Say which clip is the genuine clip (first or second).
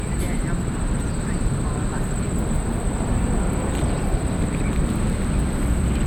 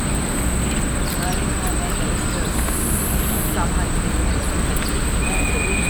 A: second